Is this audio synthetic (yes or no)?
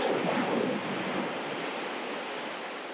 no